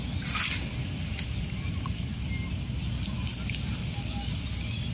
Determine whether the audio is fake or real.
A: real